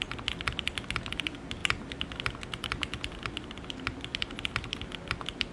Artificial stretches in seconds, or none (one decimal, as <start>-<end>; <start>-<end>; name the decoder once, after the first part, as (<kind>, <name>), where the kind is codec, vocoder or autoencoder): none